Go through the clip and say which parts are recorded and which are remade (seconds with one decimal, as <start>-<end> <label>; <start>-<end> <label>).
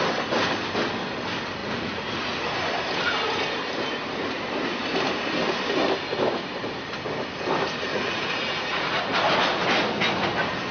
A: 0.0-1.6 recorded; 1.6-2.3 remade; 2.3-7.9 recorded; 7.9-9.0 remade; 9.0-10.7 recorded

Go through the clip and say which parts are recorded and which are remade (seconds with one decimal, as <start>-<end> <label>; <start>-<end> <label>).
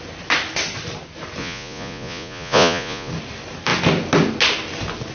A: 0.0-1.4 recorded; 1.4-3.1 remade; 3.1-5.1 recorded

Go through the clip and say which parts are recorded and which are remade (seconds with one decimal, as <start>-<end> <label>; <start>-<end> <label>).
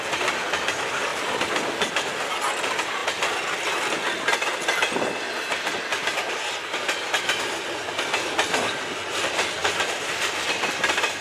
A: 0.0-1.1 recorded; 1.1-2.3 remade; 2.3-9.6 recorded; 9.6-11.2 remade